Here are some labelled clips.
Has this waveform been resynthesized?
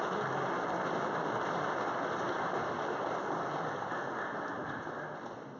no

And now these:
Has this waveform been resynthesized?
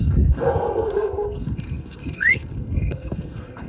yes